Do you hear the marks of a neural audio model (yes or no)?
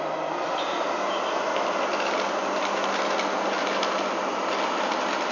no